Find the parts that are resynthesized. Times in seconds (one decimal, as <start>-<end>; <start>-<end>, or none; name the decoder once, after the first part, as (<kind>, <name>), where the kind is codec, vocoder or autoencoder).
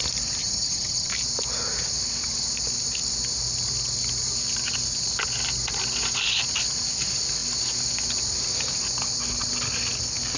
0.4-1.1 (vocoder, HiFi-GAN)